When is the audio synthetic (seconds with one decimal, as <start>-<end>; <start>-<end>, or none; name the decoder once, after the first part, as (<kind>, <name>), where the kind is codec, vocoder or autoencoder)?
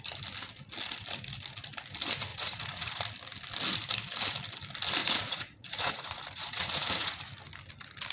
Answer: 2.3-3.0 (vocoder, Vocos); 5.0-7.2